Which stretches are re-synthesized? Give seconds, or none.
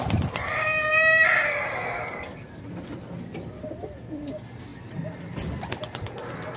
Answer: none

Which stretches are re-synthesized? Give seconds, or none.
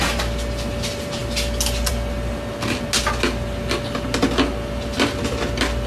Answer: none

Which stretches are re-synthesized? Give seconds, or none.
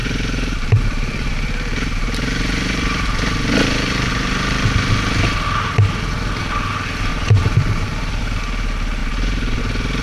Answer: 0.0-4.1 (vocoder, BigVGAN v2); 7.1-8.2; 9.0-9.6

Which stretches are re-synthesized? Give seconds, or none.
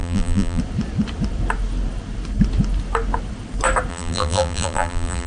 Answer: 0.0-0.6 (vocoder, BigVGAN v2); 3.9-5.3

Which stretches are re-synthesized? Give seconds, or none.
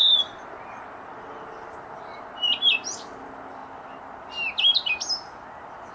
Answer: none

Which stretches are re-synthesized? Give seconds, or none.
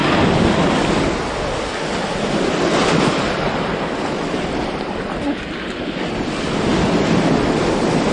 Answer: none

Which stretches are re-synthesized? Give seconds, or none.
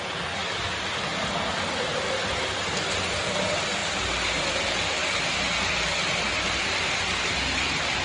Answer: none